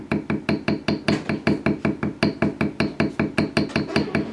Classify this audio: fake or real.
real